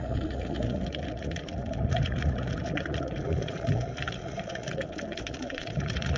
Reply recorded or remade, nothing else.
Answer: remade